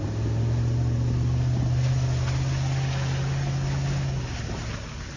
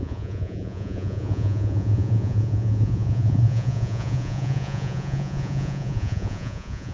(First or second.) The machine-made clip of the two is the second